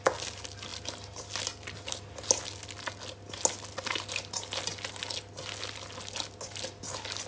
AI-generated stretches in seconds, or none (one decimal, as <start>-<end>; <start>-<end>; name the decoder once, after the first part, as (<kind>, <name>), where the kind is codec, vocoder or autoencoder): none